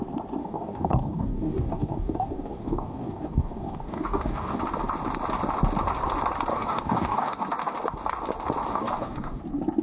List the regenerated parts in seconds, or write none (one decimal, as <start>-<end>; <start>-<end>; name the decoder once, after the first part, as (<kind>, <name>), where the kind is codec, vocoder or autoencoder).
0.4-4.6 (codec, DAC); 6.5-7.4; 8.7-9.4

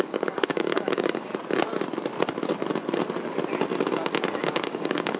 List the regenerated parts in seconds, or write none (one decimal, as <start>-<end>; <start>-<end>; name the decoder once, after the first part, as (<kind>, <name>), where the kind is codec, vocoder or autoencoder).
0.0-1.3 (codec, DAC); 4.4-5.2